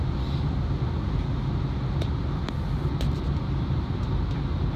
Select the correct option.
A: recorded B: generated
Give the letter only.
A